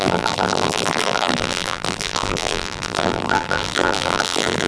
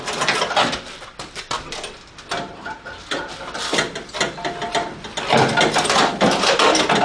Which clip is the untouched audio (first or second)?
second